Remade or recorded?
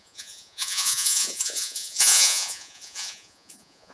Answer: remade